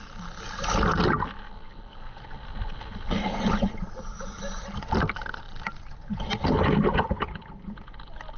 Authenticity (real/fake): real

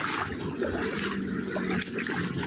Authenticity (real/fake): real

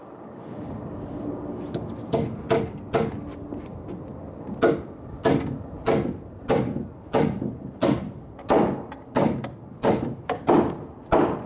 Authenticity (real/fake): real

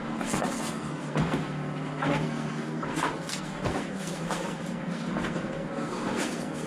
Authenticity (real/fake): fake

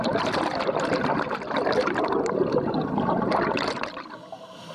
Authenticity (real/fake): real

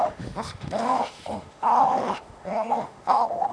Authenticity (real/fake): fake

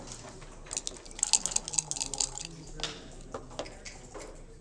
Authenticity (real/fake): real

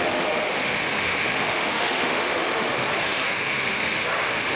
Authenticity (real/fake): fake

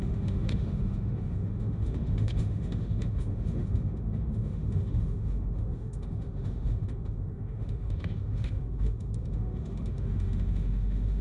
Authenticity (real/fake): fake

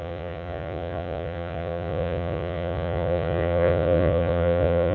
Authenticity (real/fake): fake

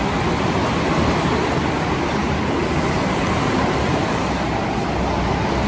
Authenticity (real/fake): real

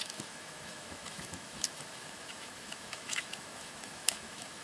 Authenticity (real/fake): fake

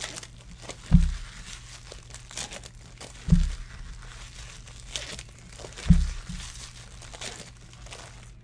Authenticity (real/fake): real